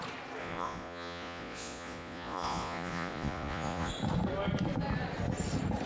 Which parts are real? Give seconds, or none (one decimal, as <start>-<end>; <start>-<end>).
0.0-0.4; 3.9-5.9